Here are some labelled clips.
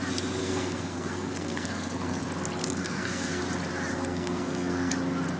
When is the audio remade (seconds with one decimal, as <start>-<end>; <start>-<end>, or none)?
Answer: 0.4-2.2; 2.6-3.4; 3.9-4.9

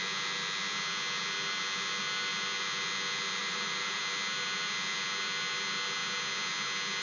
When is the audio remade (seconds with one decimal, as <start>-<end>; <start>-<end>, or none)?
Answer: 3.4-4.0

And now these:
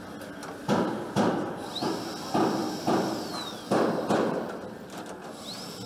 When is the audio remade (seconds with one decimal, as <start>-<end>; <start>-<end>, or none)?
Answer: none

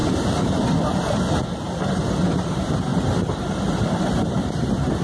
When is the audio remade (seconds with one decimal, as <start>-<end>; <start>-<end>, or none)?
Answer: 2.9-4.3